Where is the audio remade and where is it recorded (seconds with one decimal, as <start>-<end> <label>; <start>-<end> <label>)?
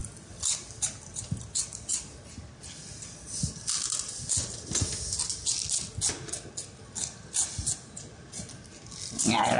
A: 0.0-9.6 recorded